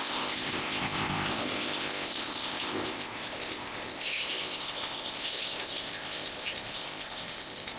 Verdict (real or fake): fake